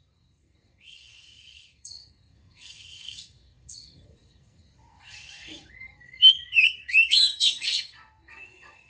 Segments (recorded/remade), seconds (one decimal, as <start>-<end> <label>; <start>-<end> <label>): 0.0-8.9 remade